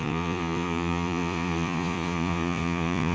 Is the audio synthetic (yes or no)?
yes